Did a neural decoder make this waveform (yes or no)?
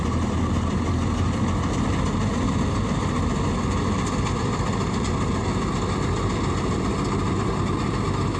no